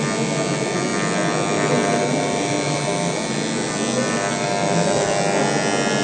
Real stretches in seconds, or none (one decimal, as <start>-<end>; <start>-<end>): 0.0-6.0